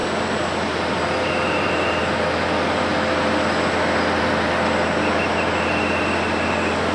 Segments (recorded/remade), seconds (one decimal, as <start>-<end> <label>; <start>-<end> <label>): 0.0-6.9 recorded